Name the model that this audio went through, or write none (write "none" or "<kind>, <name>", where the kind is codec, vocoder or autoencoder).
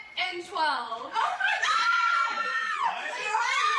vocoder, Vocos